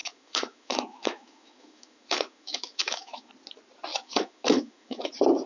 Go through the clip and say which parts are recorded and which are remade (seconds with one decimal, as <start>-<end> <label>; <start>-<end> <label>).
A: 0.0-3.3 remade; 3.3-3.9 recorded; 3.9-5.1 remade; 5.1-5.5 recorded